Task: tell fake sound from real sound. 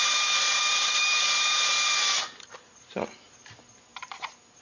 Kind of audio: fake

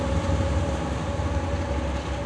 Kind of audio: real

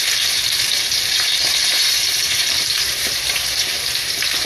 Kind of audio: fake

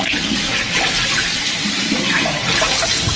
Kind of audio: fake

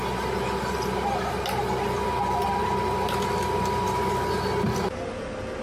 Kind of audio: real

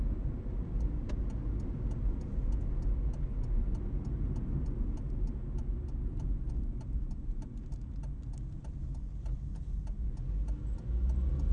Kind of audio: real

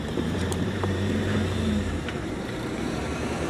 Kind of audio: fake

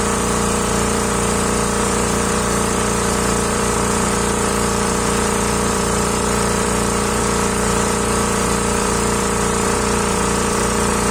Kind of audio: fake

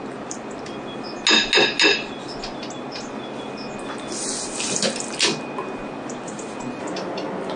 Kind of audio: real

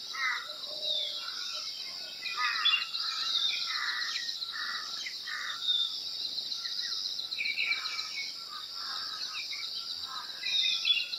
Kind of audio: real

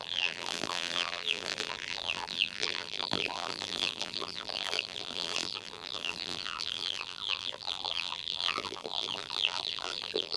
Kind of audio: fake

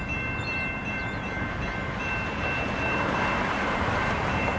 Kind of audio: fake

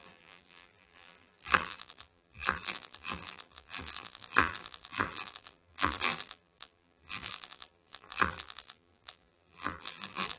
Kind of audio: fake